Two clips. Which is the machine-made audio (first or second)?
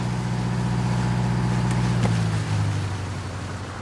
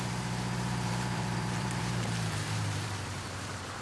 second